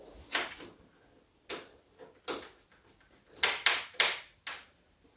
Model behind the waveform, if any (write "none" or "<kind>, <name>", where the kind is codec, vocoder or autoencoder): none